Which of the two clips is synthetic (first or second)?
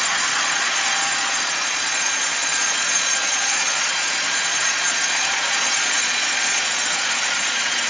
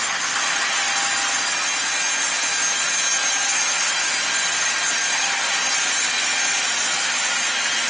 first